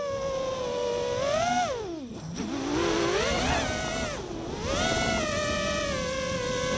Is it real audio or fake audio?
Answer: real